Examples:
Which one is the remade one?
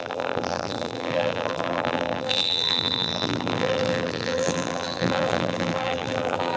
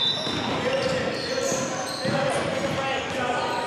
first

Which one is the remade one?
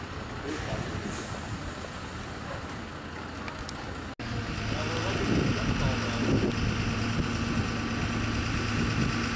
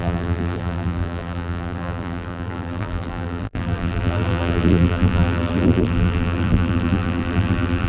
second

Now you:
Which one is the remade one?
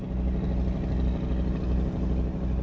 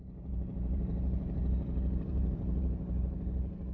second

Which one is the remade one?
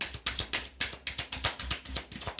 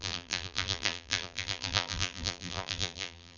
second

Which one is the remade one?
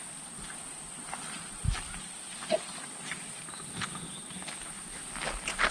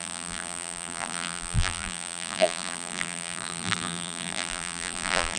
second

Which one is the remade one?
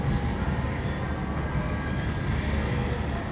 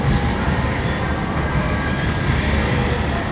second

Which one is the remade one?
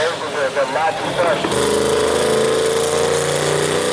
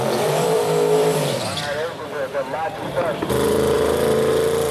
second